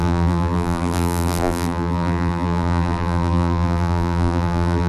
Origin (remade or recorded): remade